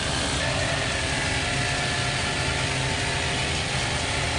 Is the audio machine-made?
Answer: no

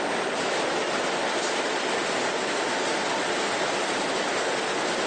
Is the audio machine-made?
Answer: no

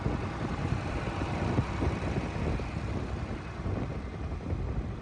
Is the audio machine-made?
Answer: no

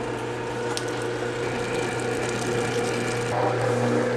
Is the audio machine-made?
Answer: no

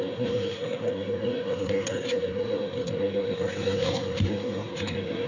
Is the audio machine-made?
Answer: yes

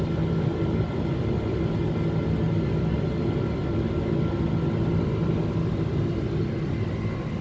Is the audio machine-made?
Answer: no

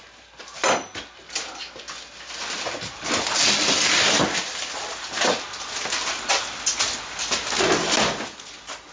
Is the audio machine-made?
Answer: no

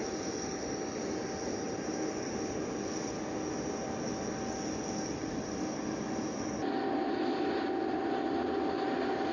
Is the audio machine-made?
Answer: no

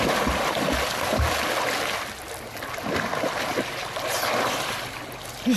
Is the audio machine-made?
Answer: no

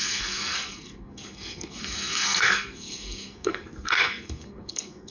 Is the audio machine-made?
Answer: yes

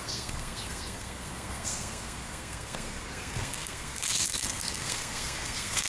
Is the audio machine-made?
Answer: yes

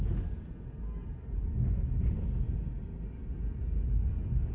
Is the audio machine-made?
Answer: no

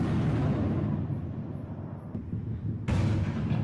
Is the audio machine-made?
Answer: no